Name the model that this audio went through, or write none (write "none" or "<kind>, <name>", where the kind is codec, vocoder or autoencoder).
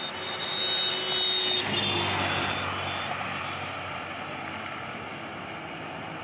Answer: none